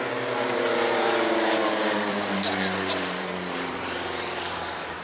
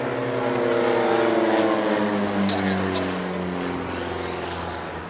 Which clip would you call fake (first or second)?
first